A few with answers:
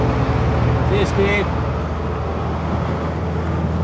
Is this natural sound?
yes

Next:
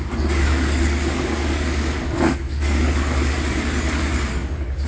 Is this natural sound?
no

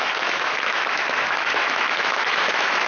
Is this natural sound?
no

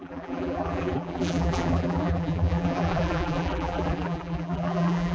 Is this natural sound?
no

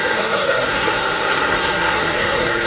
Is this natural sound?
no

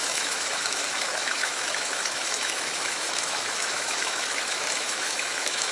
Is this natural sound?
no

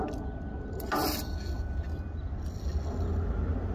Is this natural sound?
yes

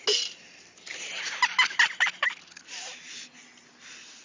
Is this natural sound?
yes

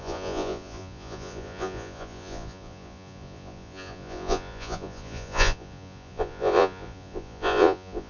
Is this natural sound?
no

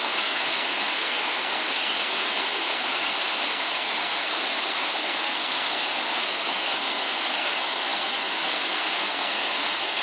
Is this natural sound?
no